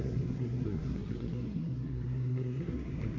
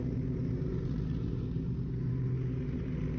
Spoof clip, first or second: first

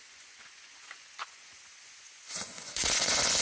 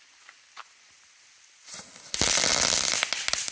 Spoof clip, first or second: first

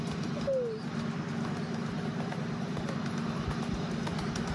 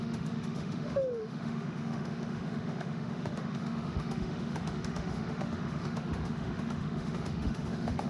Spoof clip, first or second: second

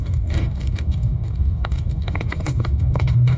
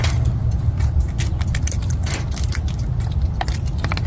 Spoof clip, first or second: first